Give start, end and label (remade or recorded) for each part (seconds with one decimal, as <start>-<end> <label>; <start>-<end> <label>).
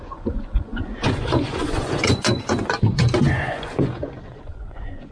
0.0-5.1 remade